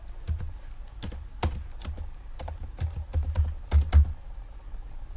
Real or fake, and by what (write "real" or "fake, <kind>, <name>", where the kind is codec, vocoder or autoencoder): real